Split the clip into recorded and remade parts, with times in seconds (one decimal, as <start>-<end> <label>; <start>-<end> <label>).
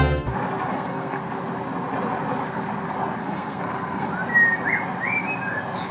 0.0-0.7 recorded; 0.7-1.2 remade; 1.2-3.2 recorded; 3.2-4.1 remade; 4.1-5.9 recorded